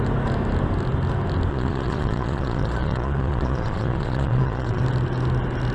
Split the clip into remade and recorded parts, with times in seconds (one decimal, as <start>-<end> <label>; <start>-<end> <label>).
0.0-1.5 recorded; 1.5-4.8 remade; 4.8-5.7 recorded